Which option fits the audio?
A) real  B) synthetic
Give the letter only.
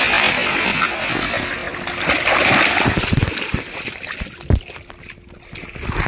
A